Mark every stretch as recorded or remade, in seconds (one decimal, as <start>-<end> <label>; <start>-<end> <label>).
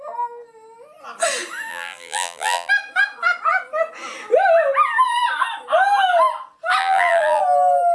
0.0-1.7 recorded; 1.7-2.7 remade; 2.7-6.8 recorded; 6.8-7.4 remade; 7.4-7.9 recorded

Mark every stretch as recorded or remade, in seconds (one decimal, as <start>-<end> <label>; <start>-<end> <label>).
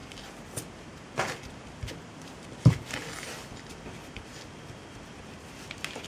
0.0-4.3 remade; 4.3-5.1 recorded; 5.1-6.1 remade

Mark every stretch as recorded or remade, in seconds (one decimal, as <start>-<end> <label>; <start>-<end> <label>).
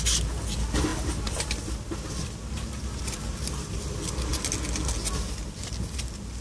0.0-6.4 recorded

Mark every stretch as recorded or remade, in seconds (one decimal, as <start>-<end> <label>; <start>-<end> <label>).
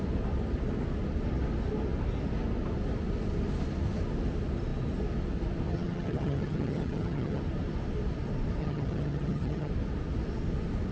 0.0-5.7 recorded; 5.7-7.4 remade; 7.4-8.6 recorded; 8.6-9.7 remade; 9.7-10.9 recorded